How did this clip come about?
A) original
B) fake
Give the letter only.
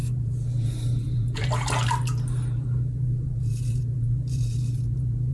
B